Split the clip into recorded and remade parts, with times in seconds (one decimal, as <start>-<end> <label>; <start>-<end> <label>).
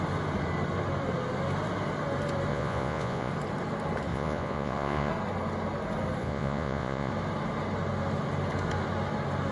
0.0-2.5 recorded; 2.5-3.3 remade; 3.3-4.1 recorded; 4.1-5.1 remade; 5.1-6.2 recorded; 6.2-7.1 remade; 7.1-9.5 recorded